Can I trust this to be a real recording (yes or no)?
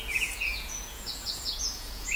no